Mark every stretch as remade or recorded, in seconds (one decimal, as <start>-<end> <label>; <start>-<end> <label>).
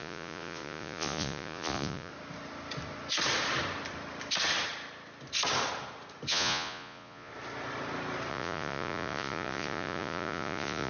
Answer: 0.0-2.1 remade; 2.1-6.3 recorded; 6.3-7.3 remade; 7.3-8.3 recorded; 8.3-10.9 remade